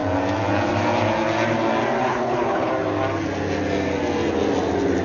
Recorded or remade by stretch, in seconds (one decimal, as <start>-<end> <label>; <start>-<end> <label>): 0.0-2.1 recorded; 2.1-2.7 remade; 2.7-5.0 recorded